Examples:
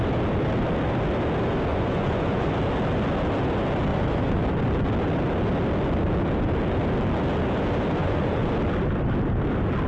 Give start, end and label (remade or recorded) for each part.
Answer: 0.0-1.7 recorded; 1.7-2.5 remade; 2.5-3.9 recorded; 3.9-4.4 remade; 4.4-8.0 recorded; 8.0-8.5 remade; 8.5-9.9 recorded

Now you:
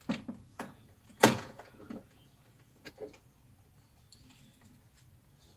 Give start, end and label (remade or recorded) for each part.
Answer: 0.0-0.5 recorded; 0.5-2.9 remade; 2.9-5.6 recorded

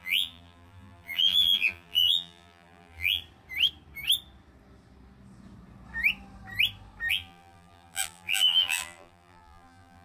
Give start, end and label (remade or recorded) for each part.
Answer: 0.0-3.2 remade; 3.2-7.1 recorded; 7.1-10.0 remade

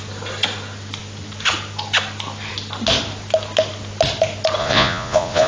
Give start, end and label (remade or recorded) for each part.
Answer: 0.0-4.6 recorded; 4.6-5.5 remade

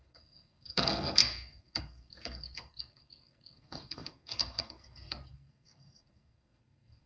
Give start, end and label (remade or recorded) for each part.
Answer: 0.0-7.1 remade

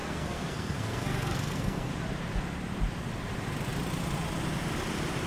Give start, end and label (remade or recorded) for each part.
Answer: 0.0-1.9 remade; 1.9-5.3 recorded